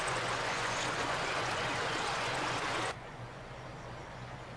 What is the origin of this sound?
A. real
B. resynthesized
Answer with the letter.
B